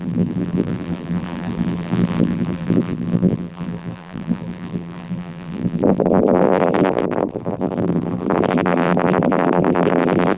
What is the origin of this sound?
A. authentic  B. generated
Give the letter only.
B